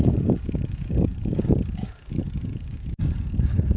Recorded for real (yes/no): no